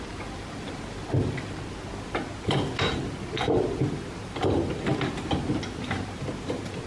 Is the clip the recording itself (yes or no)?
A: yes